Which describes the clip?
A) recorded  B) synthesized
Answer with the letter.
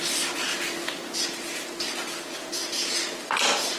A